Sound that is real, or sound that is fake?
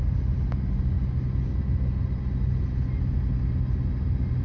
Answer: real